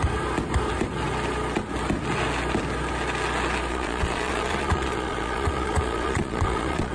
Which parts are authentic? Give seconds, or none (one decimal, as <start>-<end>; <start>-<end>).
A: 0.0-3.7